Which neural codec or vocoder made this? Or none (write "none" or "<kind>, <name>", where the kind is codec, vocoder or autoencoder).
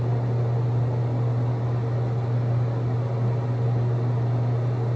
none